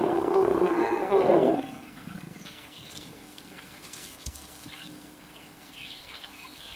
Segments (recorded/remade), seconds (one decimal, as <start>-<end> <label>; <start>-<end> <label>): 0.0-6.8 remade